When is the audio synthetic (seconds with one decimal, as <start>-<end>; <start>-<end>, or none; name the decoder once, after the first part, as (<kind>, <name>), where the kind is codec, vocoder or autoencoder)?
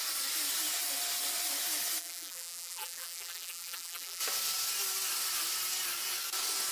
2.0-4.2 (vocoder, BigVGAN v2)